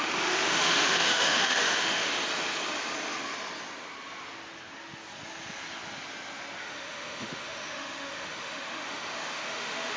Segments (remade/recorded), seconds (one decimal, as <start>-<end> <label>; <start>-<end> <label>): 0.0-2.1 remade; 2.1-6.6 recorded; 6.6-10.0 remade